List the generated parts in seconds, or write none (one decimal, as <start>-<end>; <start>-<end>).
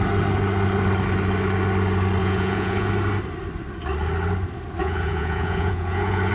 2.2-2.9; 4.8-6.3